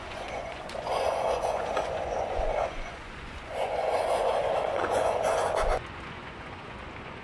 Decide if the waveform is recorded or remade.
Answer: remade